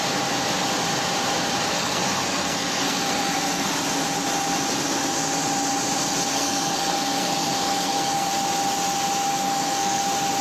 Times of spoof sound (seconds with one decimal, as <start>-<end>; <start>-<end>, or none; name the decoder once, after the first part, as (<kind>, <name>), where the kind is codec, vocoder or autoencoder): 1.7-3.7 (codec, SNAC); 6.3-8.3; 9.3-10.0